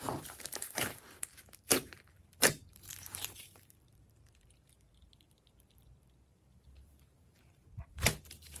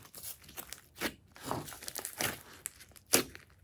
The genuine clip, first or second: second